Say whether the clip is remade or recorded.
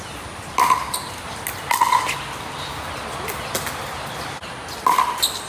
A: recorded